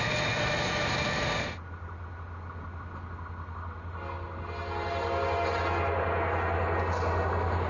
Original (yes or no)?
yes